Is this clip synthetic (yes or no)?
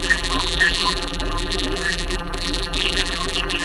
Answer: yes